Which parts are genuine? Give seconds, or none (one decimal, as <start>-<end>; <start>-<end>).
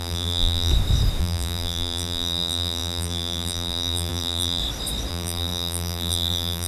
0.7-1.2; 4.6-5.1